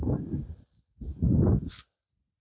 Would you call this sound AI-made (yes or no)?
no